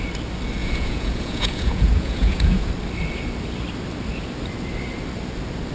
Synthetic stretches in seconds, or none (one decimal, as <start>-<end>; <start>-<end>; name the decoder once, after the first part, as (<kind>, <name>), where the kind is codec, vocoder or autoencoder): 0.6-2.7 (vocoder, Vocos)